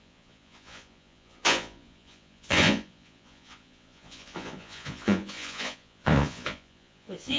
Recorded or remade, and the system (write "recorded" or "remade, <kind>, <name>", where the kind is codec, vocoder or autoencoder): remade, vocoder, Vocos